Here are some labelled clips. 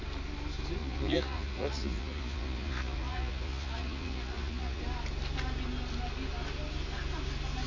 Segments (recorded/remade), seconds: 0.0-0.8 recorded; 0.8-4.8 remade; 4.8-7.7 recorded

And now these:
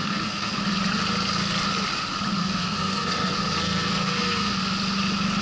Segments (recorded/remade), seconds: 0.0-0.6 remade; 0.6-2.4 recorded; 2.4-4.6 remade; 4.6-5.4 recorded

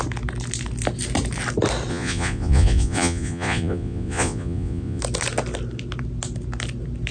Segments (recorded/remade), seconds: 0.0-1.9 recorded; 1.9-5.0 remade; 5.0-7.1 recorded

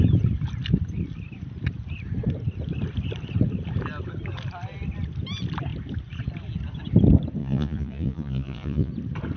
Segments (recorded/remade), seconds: 0.0-7.4 recorded; 7.4-8.9 remade; 8.9-9.4 recorded